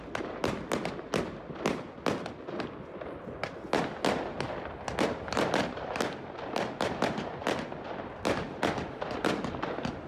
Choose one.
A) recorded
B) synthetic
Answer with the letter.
A